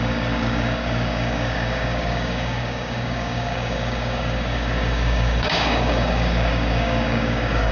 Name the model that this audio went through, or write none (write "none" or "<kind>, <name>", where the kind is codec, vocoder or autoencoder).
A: codec, DAC